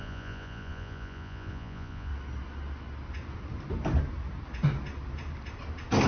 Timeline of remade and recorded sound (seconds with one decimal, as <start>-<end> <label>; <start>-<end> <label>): 0.0-2.1 remade; 2.1-6.1 recorded